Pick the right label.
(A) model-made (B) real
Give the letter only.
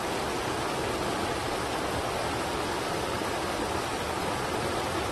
B